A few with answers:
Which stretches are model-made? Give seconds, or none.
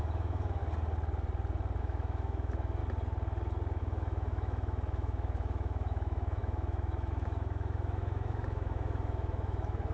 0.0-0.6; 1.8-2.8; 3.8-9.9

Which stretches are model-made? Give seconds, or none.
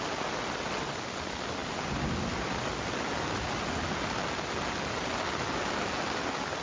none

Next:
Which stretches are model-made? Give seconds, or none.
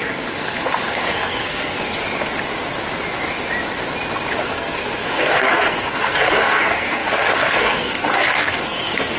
0.0-1.9; 4.4-9.2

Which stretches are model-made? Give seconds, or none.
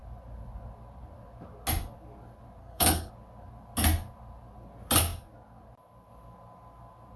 2.6-3.1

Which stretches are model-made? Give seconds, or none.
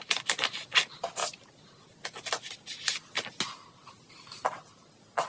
none